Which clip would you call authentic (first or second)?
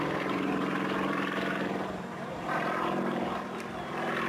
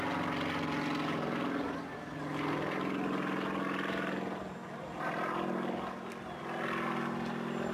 second